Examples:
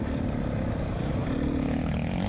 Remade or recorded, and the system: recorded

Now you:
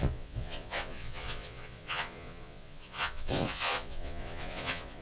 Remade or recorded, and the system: remade, vocoder, Vocos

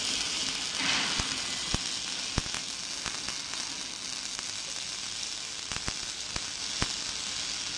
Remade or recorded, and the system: recorded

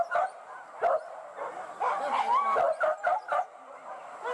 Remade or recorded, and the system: recorded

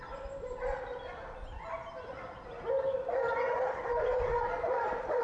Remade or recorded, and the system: recorded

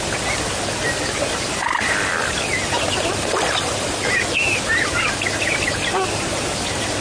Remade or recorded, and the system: recorded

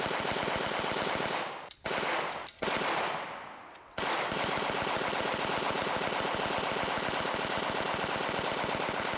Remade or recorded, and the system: recorded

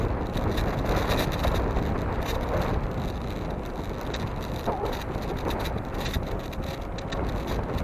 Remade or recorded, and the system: recorded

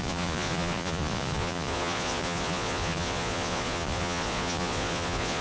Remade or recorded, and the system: remade, vocoder, Vocos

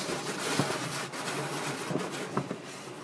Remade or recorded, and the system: recorded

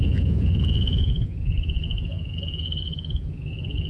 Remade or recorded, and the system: remade, vocoder, Vocos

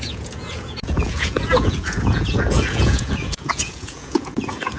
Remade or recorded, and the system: remade, vocoder, Vocos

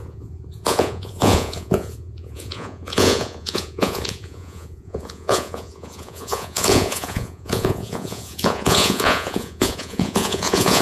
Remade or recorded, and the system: remade, vocoder, Vocos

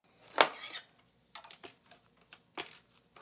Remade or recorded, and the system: recorded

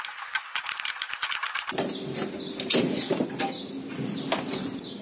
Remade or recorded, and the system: recorded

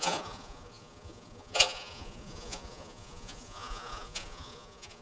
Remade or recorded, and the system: remade, vocoder, Vocos